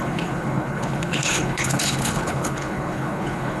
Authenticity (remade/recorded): remade